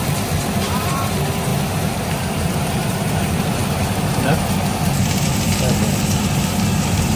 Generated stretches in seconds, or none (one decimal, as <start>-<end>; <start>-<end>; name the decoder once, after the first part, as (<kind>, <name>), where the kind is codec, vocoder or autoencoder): 0.0-7.2 (vocoder, BigVGAN v2)